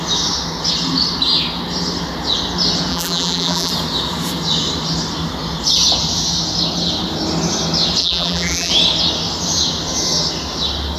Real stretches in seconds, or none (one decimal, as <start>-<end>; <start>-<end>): 0.0-2.9; 3.7-8.0; 8.7-11.0